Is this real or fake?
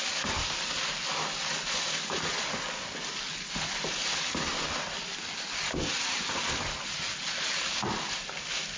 real